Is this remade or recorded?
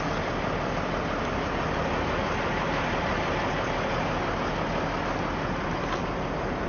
recorded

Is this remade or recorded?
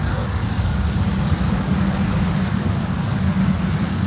remade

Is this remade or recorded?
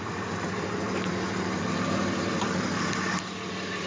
recorded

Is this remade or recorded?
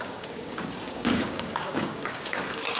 remade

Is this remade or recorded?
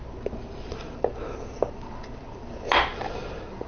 recorded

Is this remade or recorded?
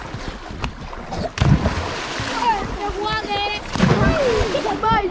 recorded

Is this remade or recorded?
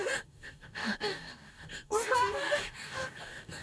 remade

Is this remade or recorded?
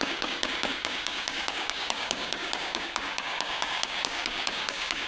remade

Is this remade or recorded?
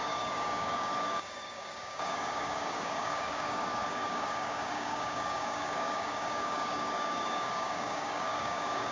remade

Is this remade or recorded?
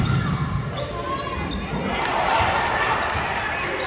recorded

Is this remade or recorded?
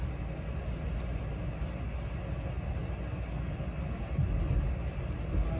recorded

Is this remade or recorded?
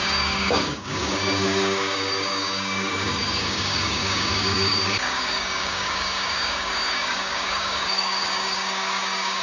remade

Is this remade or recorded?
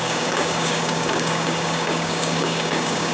remade